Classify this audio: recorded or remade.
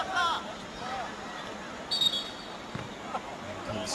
recorded